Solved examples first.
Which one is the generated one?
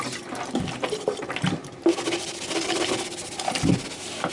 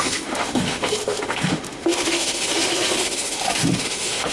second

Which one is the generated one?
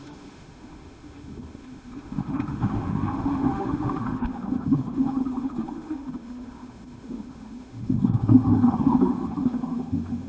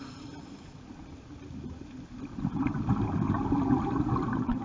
first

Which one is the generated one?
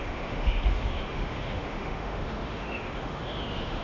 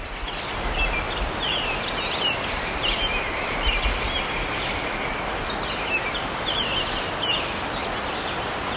first